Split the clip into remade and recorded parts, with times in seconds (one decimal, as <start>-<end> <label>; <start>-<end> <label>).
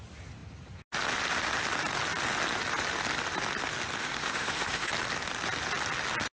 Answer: 0.0-4.0 recorded; 4.0-4.9 remade; 4.9-6.3 recorded